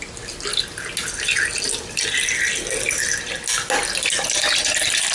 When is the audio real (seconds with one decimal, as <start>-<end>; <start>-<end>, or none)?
0.0-5.1